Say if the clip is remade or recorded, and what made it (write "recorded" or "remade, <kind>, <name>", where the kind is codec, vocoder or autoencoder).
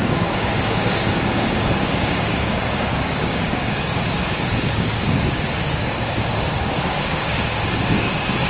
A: remade, codec, DAC